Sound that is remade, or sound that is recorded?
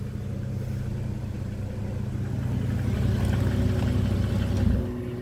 recorded